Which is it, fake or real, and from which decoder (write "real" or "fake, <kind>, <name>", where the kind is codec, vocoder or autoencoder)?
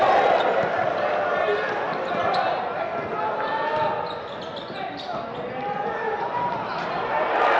real